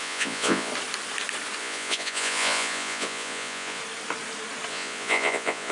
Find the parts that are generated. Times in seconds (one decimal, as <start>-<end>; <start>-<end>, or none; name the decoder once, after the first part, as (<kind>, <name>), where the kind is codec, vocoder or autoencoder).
0.0-0.7 (vocoder, Vocos); 1.6-3.8; 4.7-5.7